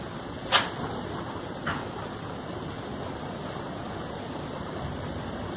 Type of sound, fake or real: real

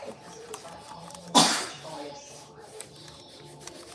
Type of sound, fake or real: fake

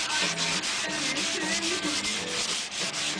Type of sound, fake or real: real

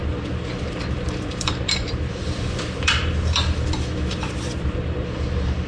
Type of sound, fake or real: fake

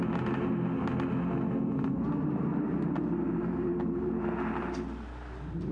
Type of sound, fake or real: real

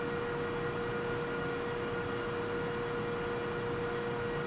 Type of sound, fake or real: real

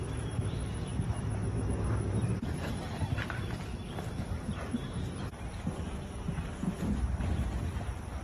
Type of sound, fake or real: fake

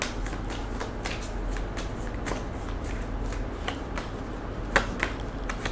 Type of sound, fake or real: real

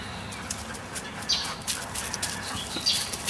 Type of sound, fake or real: real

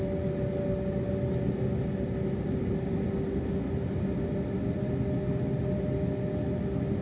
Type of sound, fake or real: real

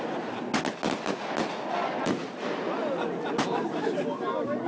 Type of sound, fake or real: real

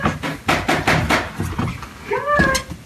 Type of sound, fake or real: real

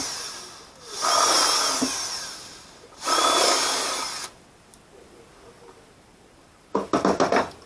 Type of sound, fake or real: real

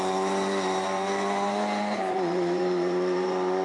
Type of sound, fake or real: fake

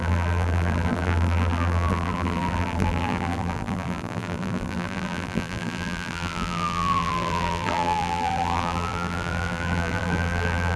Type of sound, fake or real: fake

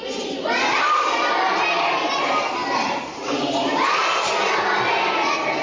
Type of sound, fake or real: fake